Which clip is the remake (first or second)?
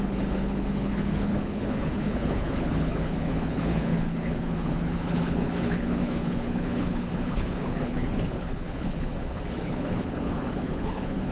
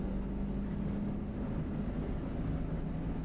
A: first